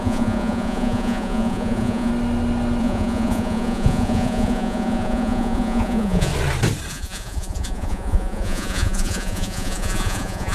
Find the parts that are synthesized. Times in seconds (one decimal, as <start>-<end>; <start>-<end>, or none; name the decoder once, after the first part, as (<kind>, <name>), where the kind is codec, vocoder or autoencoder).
0.0-2.1 (vocoder, Vocos); 2.8-6.3; 6.9-10.5